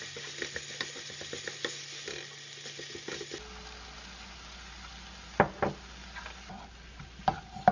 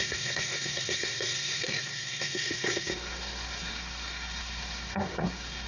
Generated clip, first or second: second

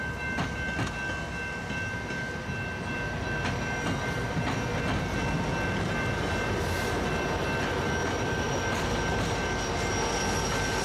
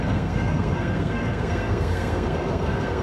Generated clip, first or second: second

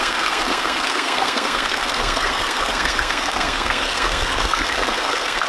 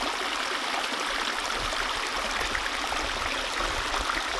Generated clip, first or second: first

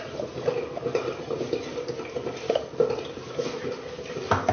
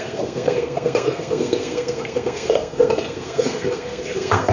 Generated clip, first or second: second